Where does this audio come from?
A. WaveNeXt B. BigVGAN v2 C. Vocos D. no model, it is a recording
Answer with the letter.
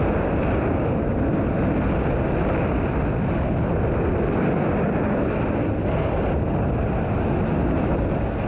D